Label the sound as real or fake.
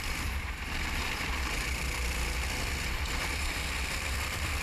fake